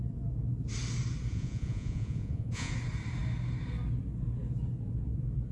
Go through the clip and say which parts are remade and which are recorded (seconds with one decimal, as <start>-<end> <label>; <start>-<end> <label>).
0.0-1.3 recorded; 1.3-2.7 remade; 2.7-5.5 recorded